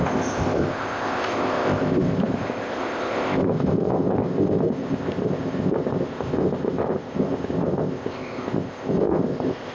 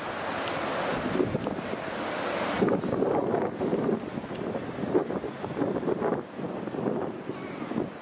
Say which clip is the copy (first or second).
first